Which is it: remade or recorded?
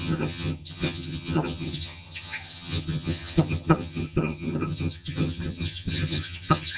remade